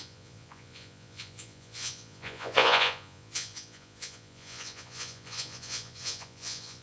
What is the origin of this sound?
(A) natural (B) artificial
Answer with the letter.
B